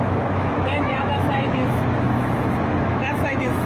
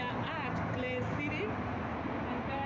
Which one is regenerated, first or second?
first